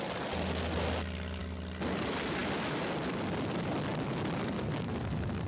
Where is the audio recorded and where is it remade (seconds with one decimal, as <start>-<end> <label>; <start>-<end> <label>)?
0.0-2.4 recorded; 2.4-5.5 remade